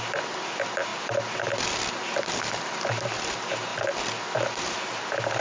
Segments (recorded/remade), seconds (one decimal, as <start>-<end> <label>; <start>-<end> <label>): 0.0-5.4 recorded

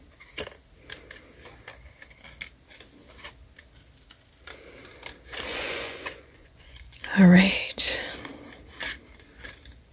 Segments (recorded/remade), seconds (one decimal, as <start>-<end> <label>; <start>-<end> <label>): 0.0-5.5 recorded; 5.5-7.4 remade; 7.4-9.9 recorded

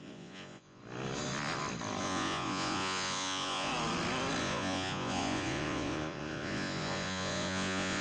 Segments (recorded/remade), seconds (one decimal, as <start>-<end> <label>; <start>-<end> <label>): 0.0-0.8 remade; 0.8-2.0 recorded; 2.0-3.7 remade; 3.7-4.4 recorded; 4.4-8.0 remade

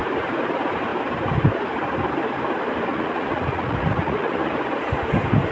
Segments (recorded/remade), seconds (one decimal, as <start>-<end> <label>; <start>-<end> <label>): 0.0-2.9 recorded; 2.9-4.5 remade; 4.5-5.5 recorded

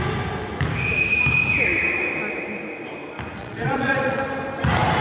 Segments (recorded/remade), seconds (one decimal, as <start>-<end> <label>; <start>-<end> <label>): 0.0-3.4 recorded; 3.4-4.2 remade; 4.2-5.0 recorded

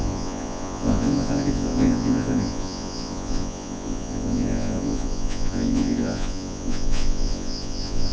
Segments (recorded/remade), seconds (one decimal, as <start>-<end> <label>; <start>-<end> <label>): 0.0-8.1 remade